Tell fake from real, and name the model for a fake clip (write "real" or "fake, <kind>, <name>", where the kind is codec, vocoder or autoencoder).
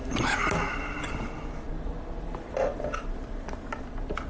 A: real